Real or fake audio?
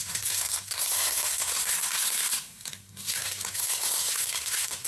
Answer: fake